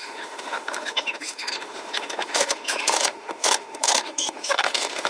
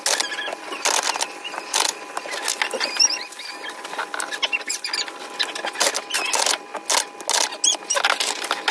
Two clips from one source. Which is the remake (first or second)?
first